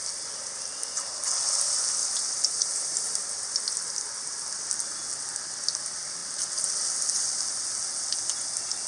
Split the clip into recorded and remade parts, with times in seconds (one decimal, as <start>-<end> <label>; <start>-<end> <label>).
0.0-2.0 recorded; 2.0-3.2 remade; 3.2-8.9 recorded